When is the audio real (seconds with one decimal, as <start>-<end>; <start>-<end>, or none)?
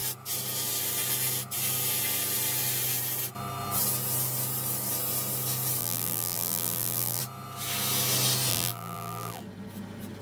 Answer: 0.0-5.8; 7.2-8.5; 9.4-10.2